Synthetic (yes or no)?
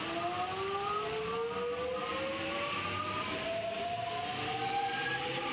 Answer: no